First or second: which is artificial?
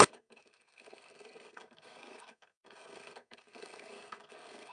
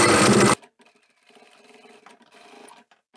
first